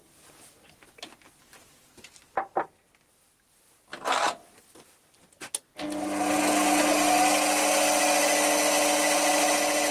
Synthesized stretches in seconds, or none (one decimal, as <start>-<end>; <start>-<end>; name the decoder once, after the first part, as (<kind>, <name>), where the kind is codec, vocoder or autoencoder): none